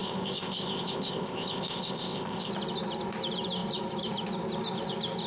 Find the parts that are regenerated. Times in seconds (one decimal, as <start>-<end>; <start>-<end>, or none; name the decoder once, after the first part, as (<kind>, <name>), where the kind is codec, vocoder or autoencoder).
0.0-2.5 (codec, ZipCodec)